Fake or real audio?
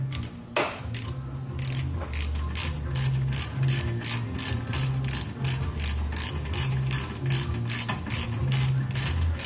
real